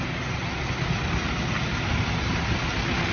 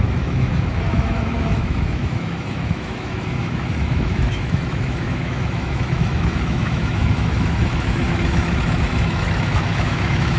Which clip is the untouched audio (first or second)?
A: first